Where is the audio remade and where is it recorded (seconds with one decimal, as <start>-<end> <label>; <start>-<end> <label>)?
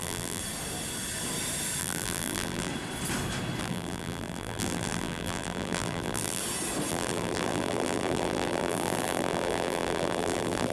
0.0-0.4 remade; 0.4-1.8 recorded; 1.8-2.7 remade; 2.7-3.6 recorded; 3.6-6.4 remade; 6.4-6.9 recorded; 6.9-10.7 remade